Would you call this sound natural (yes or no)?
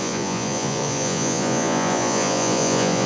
no